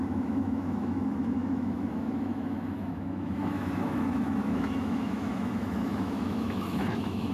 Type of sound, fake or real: fake